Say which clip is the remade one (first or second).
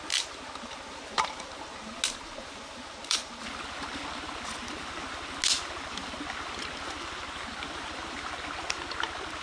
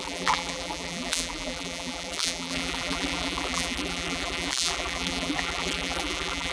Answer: second